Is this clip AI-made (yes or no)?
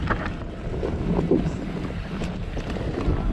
no